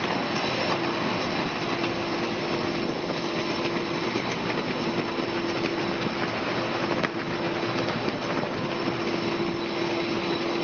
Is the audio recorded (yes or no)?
yes